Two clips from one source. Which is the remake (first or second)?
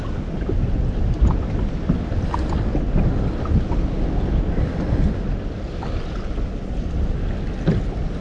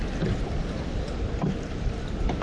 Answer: second